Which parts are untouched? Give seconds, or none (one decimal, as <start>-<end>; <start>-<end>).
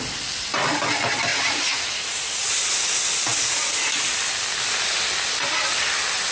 0.0-1.3; 2.5-6.3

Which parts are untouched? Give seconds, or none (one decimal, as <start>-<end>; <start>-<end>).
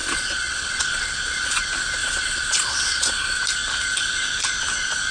1.6-2.0; 3.4-5.1